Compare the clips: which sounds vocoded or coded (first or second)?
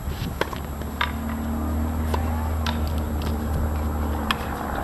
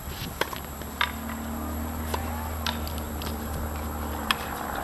second